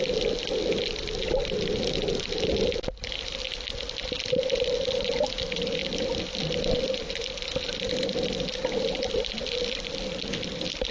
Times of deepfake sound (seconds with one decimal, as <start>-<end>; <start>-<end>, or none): none

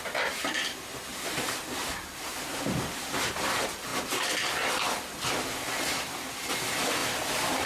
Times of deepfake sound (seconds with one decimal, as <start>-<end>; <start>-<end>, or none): none

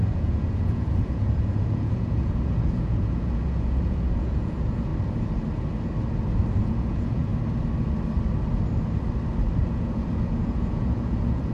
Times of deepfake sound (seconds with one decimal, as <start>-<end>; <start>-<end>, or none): 0.0-4.9; 6.6-7.3; 9.7-11.5

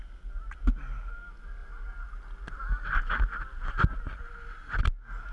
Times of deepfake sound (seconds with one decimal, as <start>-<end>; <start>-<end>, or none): none

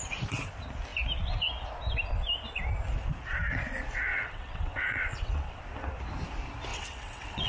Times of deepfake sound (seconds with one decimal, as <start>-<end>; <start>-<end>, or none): 4.1-5.6; 6.7-7.5